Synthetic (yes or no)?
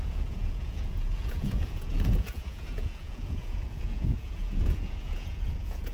yes